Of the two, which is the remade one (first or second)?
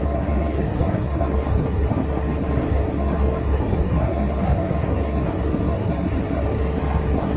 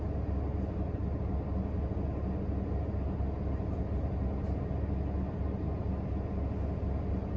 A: first